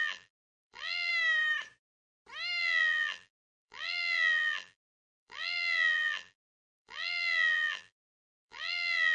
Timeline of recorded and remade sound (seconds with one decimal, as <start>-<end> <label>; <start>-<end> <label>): 0.0-1.1 remade; 1.1-2.6 recorded; 2.6-9.1 remade